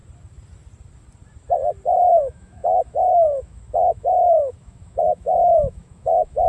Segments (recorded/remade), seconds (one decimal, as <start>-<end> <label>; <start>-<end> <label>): 0.0-2.2 recorded; 2.2-6.5 remade